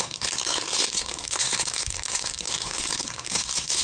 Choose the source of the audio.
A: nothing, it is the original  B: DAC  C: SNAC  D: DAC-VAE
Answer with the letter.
C